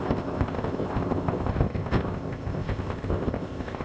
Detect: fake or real fake